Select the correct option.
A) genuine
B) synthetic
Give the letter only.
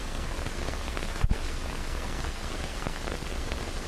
B